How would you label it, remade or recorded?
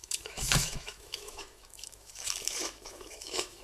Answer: remade